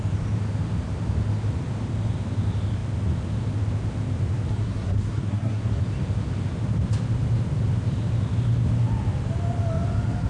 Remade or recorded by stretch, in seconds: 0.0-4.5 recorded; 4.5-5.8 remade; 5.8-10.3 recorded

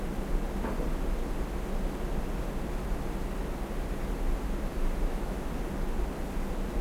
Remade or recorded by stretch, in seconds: 0.0-4.7 recorded; 4.7-5.5 remade; 5.5-6.8 recorded

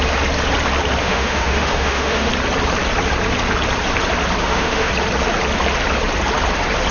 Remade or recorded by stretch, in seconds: 0.0-1.0 recorded; 1.0-2.3 remade; 2.3-4.4 recorded; 4.4-4.9 remade; 4.9-6.9 recorded

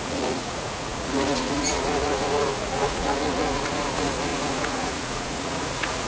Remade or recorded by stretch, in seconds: 0.0-6.1 remade